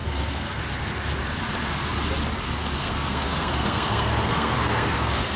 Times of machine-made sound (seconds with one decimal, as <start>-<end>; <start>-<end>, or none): 0.0-0.6; 2.8-5.4